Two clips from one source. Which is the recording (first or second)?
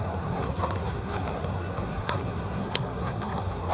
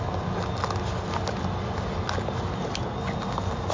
second